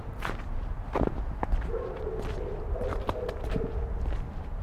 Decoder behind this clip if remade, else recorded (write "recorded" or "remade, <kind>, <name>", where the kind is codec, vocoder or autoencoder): recorded